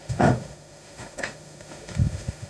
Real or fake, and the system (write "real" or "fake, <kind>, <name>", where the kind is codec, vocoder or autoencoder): fake, autoencoder, DAC-VAE